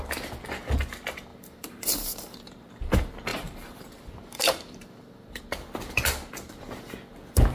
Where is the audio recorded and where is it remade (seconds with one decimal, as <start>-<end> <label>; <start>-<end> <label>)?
0.0-1.3 recorded; 1.3-2.9 remade; 2.9-3.3 recorded; 3.3-5.4 remade; 5.4-7.5 recorded